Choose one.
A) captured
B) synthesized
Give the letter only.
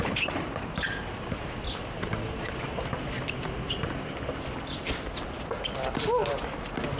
A